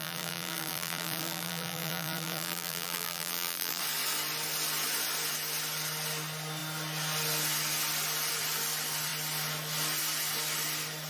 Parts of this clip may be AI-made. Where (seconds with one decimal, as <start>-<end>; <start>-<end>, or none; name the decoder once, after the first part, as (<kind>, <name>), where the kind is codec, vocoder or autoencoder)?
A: 0.0-3.8 (vocoder, BigVGAN v2)